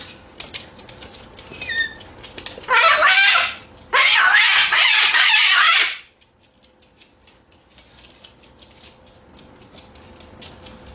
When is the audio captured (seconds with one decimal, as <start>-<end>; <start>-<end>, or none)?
0.0-4.6; 6.0-10.9